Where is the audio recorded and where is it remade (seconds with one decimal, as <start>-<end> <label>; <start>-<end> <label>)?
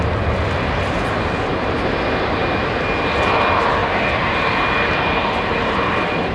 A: 0.0-6.3 recorded